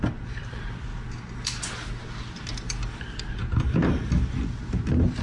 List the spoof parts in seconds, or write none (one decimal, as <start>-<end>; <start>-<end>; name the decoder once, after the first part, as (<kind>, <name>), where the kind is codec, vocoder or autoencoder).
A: 0.0-0.9 (vocoder, BigVGAN v2); 2.5-5.2